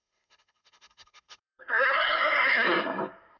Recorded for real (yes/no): no